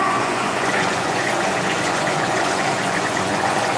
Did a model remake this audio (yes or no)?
yes